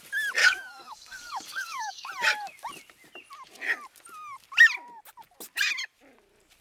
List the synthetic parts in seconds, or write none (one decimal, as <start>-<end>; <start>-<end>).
0.4-2.1